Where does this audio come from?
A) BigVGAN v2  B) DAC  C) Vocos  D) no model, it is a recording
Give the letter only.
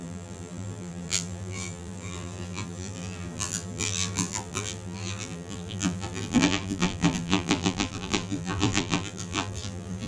A